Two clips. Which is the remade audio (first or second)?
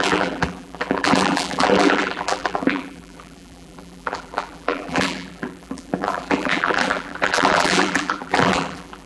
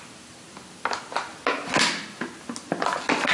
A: first